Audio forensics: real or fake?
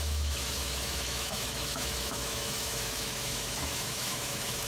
fake